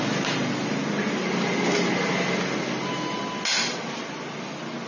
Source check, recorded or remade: recorded